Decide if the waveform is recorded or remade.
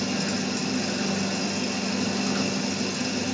recorded